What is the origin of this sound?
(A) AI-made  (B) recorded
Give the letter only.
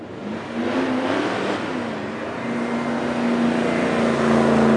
B